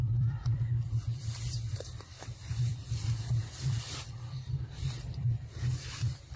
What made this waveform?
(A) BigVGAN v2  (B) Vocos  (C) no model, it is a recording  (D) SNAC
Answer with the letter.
A